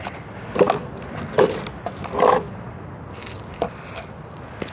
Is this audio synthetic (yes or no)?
no